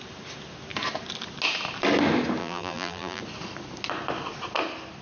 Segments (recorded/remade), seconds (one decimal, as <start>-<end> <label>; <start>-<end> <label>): 0.0-2.4 recorded; 2.4-3.2 remade; 3.2-5.0 recorded